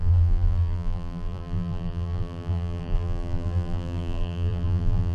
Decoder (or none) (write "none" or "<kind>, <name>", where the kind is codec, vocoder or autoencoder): vocoder, BigVGAN v2